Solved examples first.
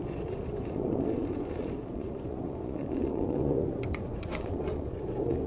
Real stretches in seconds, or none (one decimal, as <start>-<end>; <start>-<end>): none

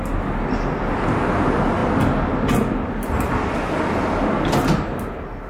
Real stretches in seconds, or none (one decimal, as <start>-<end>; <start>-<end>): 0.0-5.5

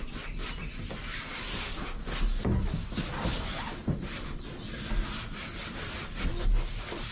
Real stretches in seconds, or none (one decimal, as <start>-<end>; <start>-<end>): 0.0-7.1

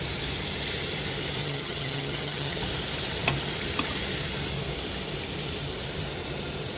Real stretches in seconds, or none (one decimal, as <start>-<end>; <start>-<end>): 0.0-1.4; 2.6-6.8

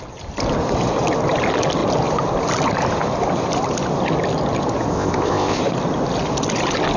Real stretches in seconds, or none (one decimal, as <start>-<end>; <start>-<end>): 0.0-4.9; 5.6-7.0

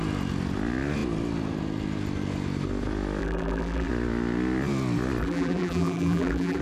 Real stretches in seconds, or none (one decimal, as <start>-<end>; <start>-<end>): 0.0-3.2; 3.9-5.2

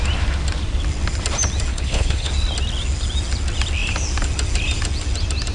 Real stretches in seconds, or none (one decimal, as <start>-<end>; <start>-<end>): 0.0-1.7; 2.3-5.5

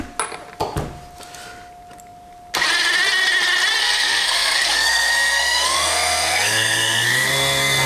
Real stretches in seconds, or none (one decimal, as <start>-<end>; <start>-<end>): 0.0-3.8